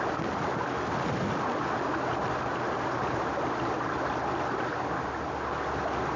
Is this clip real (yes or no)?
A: yes